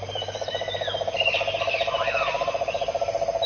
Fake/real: real